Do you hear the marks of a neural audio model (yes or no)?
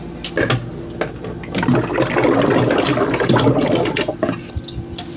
no